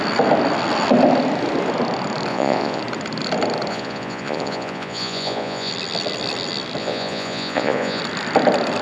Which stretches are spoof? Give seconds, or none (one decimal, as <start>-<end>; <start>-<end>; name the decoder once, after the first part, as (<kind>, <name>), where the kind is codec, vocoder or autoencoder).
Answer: 2.3-2.8 (vocoder, Vocos); 3.7-5.7; 6.8-8.0